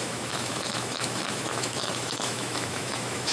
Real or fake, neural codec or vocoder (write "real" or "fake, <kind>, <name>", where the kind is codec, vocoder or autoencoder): fake, autoencoder, DAC-VAE